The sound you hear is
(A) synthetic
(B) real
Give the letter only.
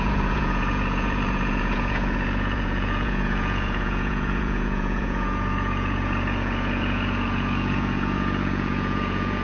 A